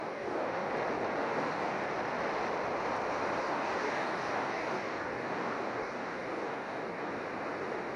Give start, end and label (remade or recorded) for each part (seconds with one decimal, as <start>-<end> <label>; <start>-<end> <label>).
0.0-0.7 remade; 0.7-1.2 recorded; 1.2-1.8 remade; 1.8-3.4 recorded; 3.4-7.1 remade; 7.1-8.0 recorded